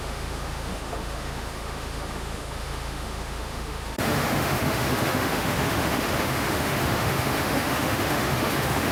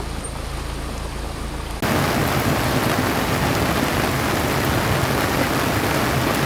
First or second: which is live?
second